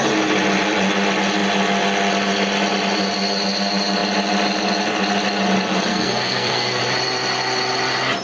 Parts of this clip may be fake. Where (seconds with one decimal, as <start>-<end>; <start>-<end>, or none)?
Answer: 5.9-6.8